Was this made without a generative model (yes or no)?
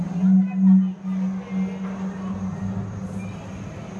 yes